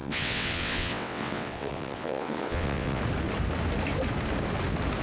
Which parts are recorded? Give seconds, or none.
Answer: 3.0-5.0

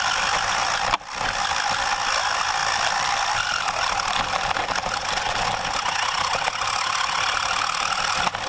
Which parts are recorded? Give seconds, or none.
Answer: 0.0-2.6; 4.5-8.5

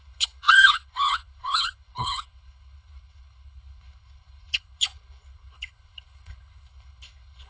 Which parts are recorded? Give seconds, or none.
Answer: none

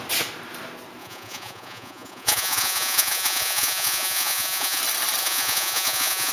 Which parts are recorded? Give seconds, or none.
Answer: 0.0-1.0; 4.8-5.2

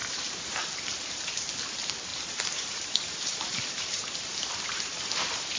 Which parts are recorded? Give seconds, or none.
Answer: 1.5-2.1